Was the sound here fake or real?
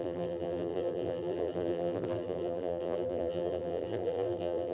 fake